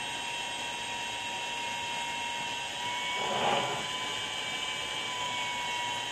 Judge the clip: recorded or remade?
recorded